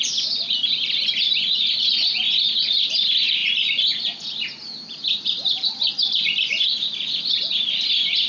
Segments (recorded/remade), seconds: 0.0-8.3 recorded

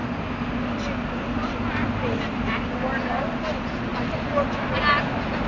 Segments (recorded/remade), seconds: 0.0-5.5 recorded